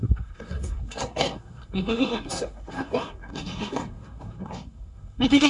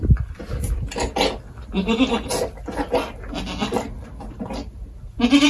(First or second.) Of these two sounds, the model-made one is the first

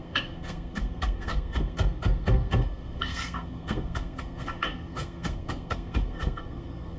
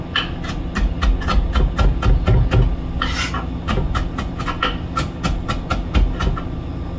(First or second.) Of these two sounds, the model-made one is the first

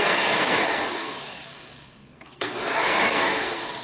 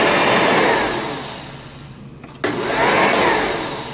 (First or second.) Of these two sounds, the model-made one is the first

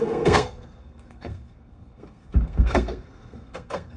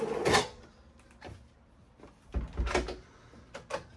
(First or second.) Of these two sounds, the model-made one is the first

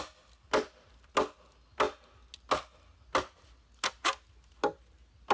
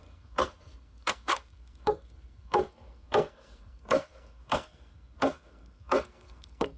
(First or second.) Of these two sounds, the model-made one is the second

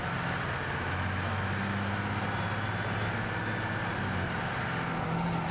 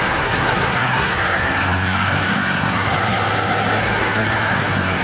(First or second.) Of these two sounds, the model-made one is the second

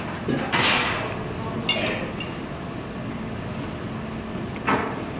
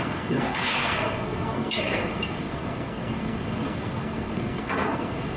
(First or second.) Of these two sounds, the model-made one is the second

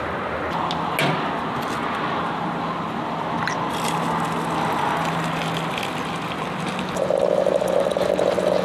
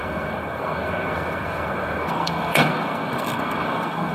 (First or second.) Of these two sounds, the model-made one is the second